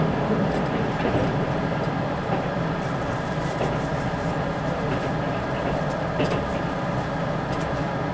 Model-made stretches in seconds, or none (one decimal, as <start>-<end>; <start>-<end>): none